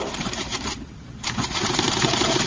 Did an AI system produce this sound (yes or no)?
yes